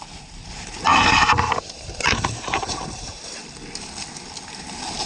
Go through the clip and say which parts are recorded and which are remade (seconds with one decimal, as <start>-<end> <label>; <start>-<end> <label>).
0.0-3.4 remade; 3.4-4.5 recorded; 4.5-5.1 remade